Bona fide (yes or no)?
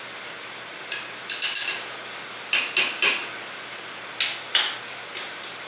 yes